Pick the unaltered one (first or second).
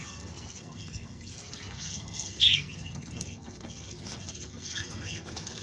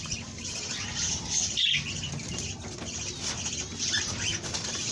second